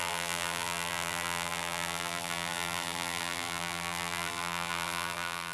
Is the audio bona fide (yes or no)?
no